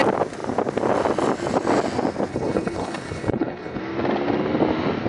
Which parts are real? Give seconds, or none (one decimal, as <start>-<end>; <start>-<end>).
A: 0.0-2.3; 3.8-5.1